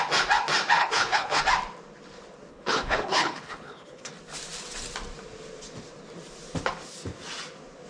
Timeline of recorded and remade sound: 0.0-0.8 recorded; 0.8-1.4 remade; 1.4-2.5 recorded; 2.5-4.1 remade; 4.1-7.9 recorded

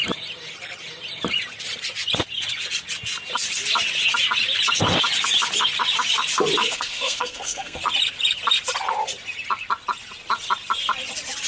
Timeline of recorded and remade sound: 0.0-6.6 recorded; 6.6-7.8 remade; 7.8-11.5 recorded

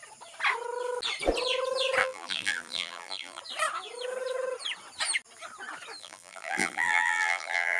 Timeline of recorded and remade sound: 0.0-2.0 recorded; 2.0-3.4 remade; 3.4-6.0 recorded; 6.0-7.8 remade

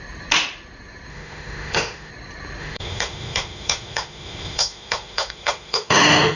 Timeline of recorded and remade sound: 0.0-1.1 recorded; 1.1-2.1 remade; 2.1-2.6 recorded; 2.6-6.4 remade

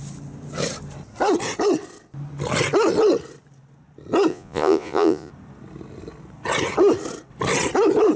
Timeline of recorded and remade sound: 0.0-4.3 recorded; 4.3-5.3 remade; 5.3-8.2 recorded

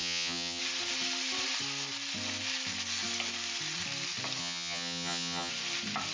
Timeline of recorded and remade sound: 0.0-0.6 remade; 0.6-4.4 recorded; 4.4-5.5 remade; 5.5-6.1 recorded

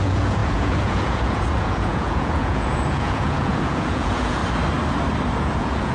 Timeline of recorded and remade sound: 0.0-4.4 remade; 4.4-5.4 recorded; 5.4-5.9 remade